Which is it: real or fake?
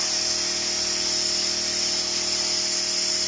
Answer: real